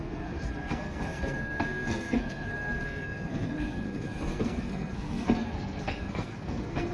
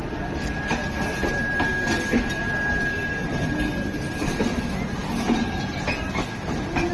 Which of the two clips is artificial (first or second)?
first